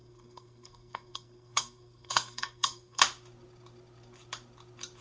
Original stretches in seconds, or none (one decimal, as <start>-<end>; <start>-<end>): 3.0-5.0